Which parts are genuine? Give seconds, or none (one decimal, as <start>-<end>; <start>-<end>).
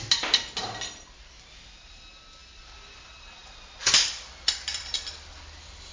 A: 0.0-5.9